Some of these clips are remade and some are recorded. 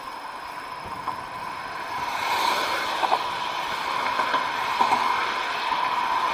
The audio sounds recorded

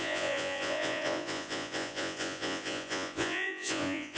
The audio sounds remade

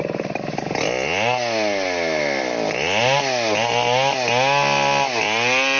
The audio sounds recorded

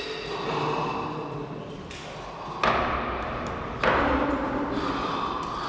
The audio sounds recorded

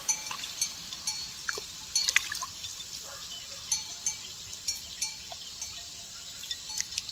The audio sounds recorded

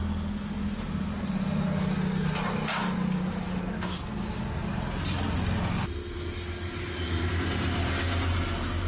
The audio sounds recorded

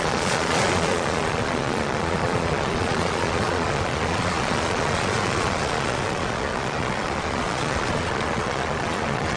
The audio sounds remade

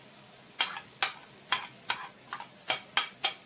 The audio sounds recorded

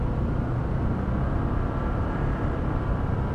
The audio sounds recorded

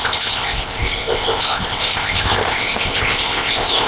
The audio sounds remade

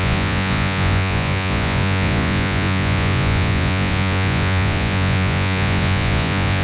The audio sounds remade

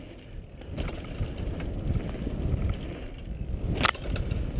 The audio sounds recorded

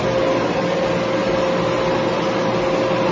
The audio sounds recorded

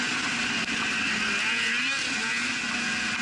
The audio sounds recorded